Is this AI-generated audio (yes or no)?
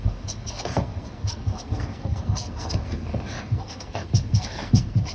yes